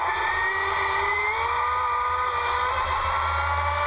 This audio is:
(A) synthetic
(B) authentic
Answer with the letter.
B